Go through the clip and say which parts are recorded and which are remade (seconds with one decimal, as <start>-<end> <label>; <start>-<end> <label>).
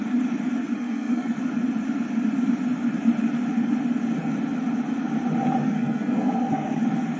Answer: 0.0-0.6 recorded; 0.6-1.4 remade; 1.4-5.6 recorded; 5.6-6.8 remade; 6.8-7.2 recorded